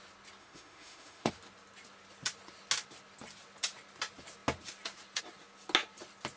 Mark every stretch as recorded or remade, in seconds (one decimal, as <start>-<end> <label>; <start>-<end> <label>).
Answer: 0.0-0.4 recorded; 0.4-1.3 remade; 1.3-6.4 recorded